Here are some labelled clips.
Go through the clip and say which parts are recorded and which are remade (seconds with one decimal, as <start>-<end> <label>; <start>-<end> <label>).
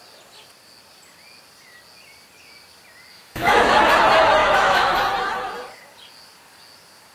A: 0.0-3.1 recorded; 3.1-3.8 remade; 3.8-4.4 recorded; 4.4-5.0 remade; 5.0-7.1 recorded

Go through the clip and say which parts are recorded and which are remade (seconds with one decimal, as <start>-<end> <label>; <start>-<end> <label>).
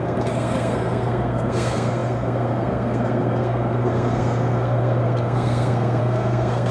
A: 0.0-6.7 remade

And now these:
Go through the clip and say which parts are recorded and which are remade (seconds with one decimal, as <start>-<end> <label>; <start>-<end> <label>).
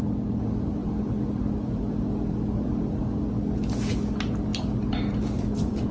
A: 0.0-5.9 recorded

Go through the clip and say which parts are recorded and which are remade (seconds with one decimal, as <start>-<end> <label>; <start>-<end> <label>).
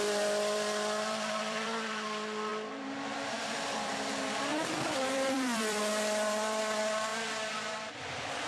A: 0.0-8.5 remade